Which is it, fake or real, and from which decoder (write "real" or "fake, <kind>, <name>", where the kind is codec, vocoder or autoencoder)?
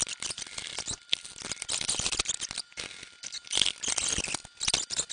real